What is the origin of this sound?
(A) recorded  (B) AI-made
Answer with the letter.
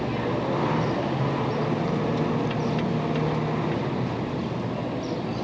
A